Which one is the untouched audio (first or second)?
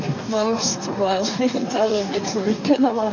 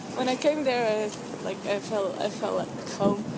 second